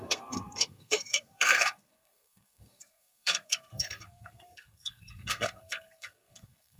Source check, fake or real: fake